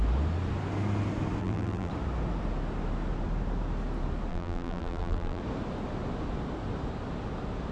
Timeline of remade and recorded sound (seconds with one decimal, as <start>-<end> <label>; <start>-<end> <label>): 0.0-1.4 recorded; 1.4-1.9 remade; 1.9-4.3 recorded; 4.3-5.4 remade; 5.4-7.7 recorded